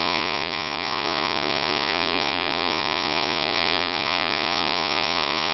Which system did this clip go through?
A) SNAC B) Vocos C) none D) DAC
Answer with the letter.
B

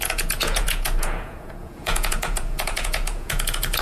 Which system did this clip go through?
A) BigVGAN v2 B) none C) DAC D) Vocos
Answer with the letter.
D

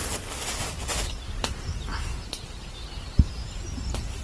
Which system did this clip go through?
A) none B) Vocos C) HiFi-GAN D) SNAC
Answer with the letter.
A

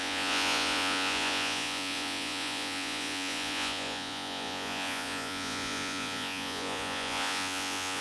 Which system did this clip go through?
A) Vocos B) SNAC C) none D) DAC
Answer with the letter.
A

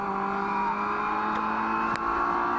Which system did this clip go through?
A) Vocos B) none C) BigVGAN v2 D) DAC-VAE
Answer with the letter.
B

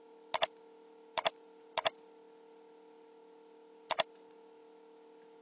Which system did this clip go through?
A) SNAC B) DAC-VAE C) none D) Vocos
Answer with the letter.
C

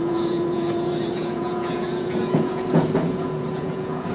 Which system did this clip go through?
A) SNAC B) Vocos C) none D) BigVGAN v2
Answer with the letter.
B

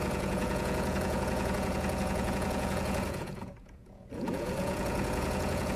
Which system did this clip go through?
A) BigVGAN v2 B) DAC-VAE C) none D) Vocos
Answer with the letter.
D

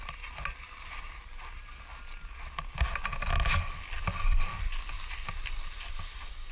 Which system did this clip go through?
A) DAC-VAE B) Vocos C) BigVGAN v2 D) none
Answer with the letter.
D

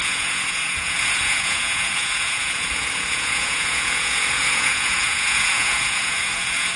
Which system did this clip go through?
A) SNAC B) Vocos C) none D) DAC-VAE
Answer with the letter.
B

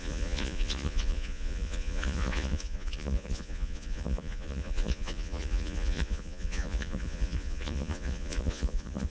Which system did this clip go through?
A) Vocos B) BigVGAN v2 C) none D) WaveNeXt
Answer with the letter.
A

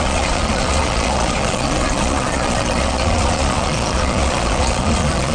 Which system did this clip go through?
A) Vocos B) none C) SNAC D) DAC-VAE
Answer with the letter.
A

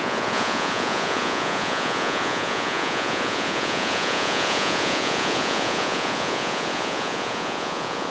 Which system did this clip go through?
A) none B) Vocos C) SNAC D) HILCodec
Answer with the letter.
B